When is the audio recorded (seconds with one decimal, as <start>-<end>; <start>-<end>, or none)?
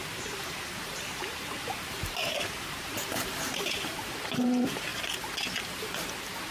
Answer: 4.9-6.5